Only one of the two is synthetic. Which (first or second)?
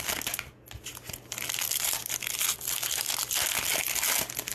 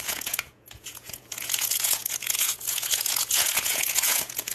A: second